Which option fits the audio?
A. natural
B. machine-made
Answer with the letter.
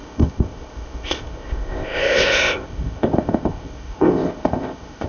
B